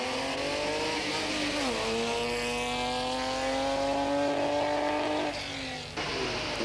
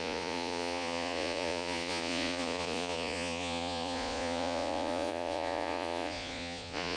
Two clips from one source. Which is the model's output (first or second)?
second